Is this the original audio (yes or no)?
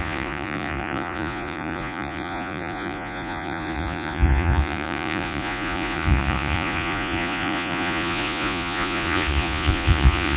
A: no